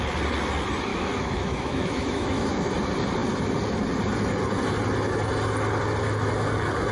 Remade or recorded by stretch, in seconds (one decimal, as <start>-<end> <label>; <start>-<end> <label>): 0.0-0.9 recorded; 0.9-2.7 remade; 2.7-6.9 recorded